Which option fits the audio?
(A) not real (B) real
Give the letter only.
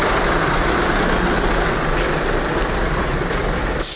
B